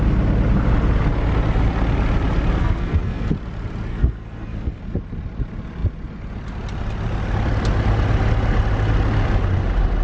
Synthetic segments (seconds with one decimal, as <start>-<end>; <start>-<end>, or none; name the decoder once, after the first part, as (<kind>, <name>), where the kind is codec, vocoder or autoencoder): 2.6-3.3 (codec, SNAC); 3.9-4.8